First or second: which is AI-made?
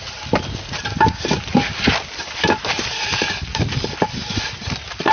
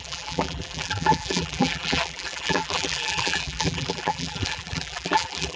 second